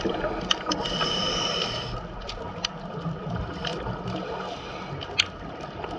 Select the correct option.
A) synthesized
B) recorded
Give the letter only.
B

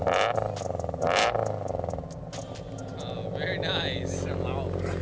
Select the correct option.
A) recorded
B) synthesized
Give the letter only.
A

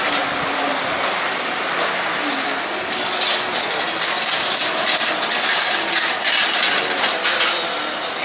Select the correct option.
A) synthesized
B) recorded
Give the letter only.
B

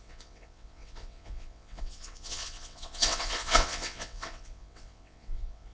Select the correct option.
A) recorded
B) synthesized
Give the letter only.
B